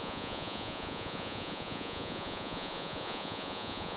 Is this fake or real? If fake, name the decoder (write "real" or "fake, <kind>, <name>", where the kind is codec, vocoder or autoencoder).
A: fake, vocoder, Vocos